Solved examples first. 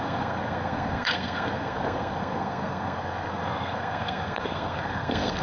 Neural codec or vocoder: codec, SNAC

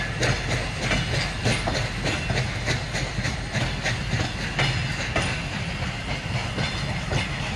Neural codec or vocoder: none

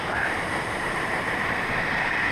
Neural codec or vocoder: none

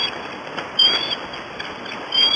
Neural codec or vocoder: none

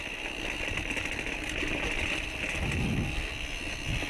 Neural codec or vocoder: none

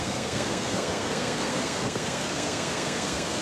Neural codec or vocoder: codec, SNAC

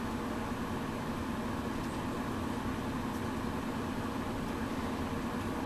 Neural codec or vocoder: none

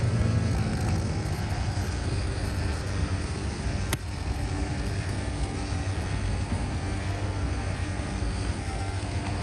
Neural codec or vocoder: codec, SNAC